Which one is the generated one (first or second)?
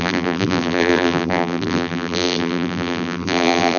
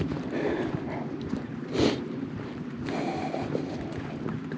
first